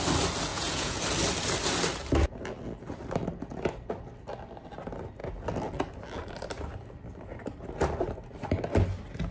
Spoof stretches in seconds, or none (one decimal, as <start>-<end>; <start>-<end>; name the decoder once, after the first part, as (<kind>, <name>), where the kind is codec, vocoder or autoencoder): 0.5-1.0 (vocoder, Vocos)